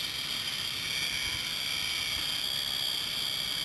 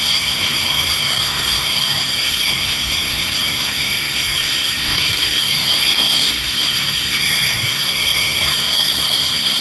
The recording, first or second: first